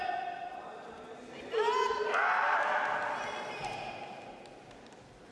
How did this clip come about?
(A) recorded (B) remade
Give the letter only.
A